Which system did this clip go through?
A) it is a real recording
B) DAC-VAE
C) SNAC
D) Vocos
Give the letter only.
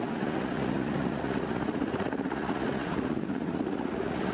D